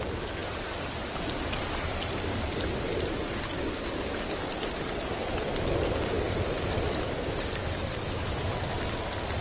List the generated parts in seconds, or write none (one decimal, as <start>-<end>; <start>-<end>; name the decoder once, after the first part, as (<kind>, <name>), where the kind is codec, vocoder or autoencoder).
none